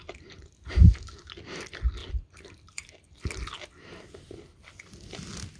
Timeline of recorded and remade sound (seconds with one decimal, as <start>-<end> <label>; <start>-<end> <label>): 0.0-5.6 recorded